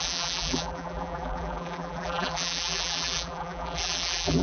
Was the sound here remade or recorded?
remade